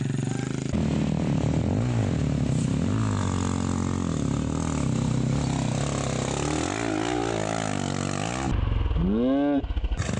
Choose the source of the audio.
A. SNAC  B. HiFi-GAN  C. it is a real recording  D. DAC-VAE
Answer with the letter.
C